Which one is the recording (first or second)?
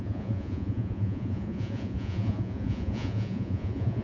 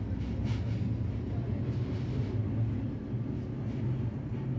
second